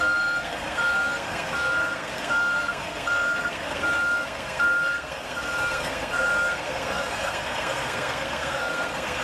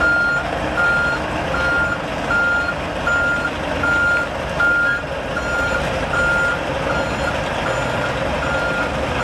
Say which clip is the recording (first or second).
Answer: second